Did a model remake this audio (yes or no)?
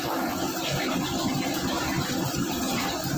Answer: no